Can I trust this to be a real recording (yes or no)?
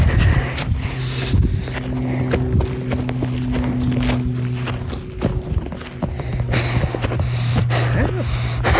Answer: yes